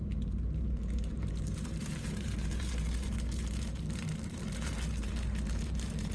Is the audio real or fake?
fake